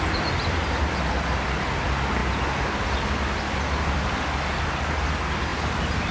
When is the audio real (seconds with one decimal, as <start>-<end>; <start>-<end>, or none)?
0.0-6.1